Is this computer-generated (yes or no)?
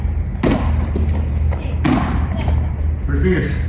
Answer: no